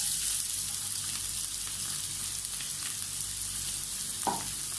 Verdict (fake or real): real